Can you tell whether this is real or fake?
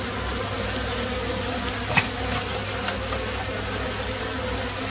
real